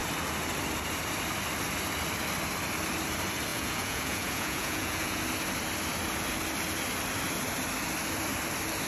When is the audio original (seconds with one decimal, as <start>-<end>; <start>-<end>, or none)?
0.0-3.5; 5.2-8.9